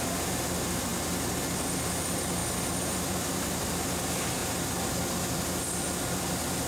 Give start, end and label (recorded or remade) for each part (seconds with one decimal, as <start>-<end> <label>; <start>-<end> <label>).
0.0-0.9 remade; 0.9-1.9 recorded; 1.9-4.4 remade; 4.4-5.3 recorded; 5.3-6.7 remade